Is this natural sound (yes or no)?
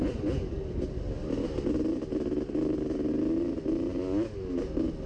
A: yes